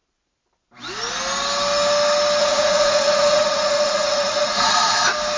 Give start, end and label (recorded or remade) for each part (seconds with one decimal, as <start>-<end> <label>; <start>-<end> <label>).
0.0-2.4 recorded; 2.4-5.0 remade; 5.0-5.4 recorded

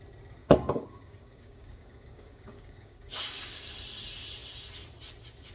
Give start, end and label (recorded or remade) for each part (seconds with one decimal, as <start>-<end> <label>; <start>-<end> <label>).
0.0-0.4 recorded; 0.4-3.7 remade; 3.7-5.5 recorded

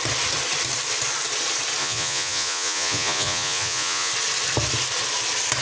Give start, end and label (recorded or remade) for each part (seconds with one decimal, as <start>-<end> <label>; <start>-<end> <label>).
0.0-1.8 recorded; 1.8-4.1 remade; 4.1-5.6 recorded

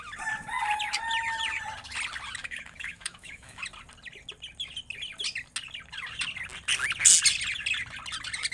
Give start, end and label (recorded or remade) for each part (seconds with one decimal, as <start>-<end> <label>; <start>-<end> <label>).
0.0-2.4 recorded; 2.4-3.6 remade; 3.6-8.5 recorded

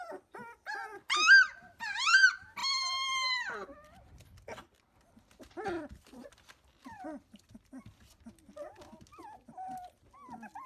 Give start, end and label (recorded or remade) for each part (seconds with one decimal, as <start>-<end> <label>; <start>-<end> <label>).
0.0-10.7 recorded

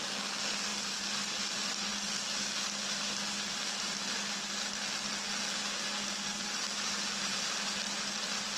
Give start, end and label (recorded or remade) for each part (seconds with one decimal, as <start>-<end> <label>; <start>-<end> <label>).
0.0-8.6 recorded